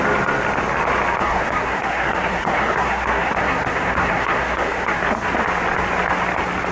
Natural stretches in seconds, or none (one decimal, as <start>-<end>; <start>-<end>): 0.0-1.2; 5.0-6.7